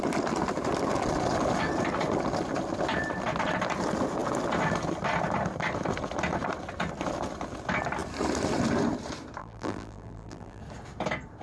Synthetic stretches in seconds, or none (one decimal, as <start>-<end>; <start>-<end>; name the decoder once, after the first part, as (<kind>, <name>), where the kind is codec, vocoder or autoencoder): 9.4-10.6 (vocoder, BigVGAN v2)

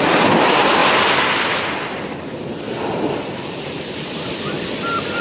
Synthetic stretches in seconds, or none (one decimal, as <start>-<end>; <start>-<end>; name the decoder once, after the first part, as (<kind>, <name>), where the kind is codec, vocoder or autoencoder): none

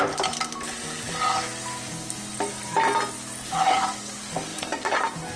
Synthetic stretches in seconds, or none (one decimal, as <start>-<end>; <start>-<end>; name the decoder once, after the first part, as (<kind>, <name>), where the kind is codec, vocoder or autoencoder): 4.5-5.4 (vocoder, BigVGAN v2)

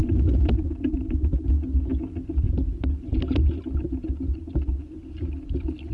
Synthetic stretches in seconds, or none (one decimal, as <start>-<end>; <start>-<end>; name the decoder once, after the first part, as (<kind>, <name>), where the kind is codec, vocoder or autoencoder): 0.0-1.5 (vocoder, BigVGAN v2); 4.0-4.8